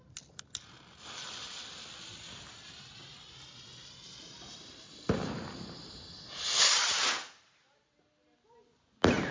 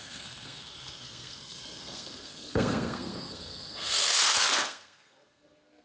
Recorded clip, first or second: first